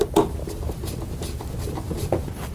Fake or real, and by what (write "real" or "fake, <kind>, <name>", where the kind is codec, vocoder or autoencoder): real